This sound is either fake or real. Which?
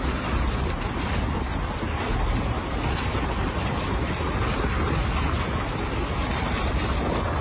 real